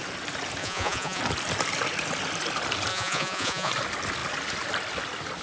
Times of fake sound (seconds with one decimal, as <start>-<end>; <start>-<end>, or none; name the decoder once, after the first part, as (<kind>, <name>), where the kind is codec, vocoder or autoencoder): 0.6-1.2 (vocoder, Vocos); 2.9-3.7